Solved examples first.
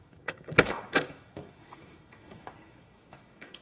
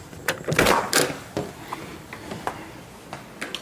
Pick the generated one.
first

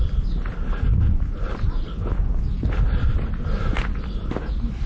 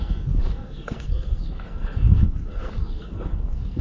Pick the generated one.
second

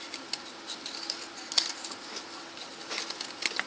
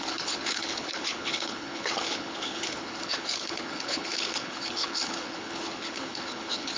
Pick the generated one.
second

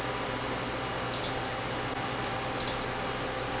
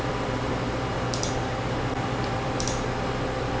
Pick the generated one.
second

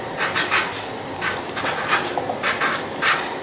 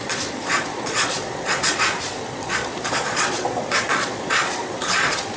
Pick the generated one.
second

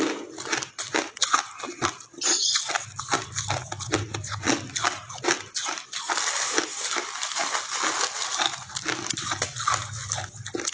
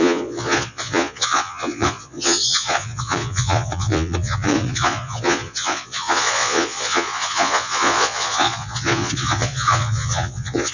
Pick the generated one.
second